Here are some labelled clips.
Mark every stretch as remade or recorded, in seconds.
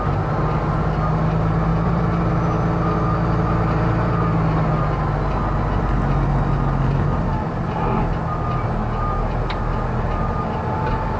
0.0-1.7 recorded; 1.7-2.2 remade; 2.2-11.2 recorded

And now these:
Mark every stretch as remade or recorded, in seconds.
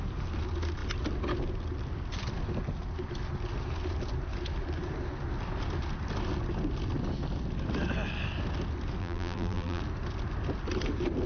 0.0-9.0 recorded; 9.0-9.8 remade; 9.8-11.3 recorded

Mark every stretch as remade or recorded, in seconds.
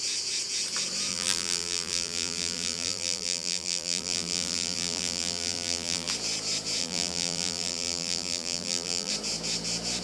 0.0-1.1 recorded; 1.1-6.1 remade; 6.1-6.8 recorded; 6.8-9.1 remade; 9.1-10.0 recorded